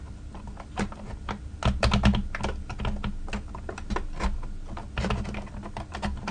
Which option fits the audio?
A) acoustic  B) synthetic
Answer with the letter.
A